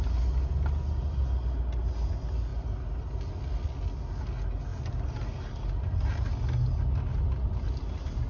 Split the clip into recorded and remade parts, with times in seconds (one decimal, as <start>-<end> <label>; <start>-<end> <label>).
0.0-4.7 recorded; 4.7-5.6 remade; 5.6-8.3 recorded